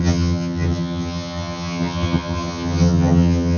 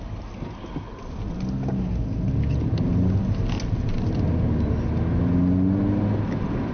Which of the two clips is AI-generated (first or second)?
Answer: first